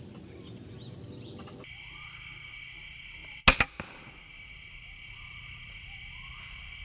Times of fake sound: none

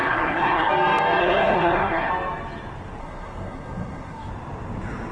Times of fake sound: 0.0-0.7; 1.2-2.1; 3.0-4.3

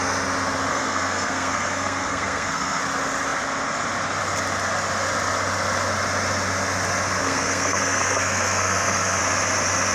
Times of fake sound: 0.7-2.8; 7.2-9.2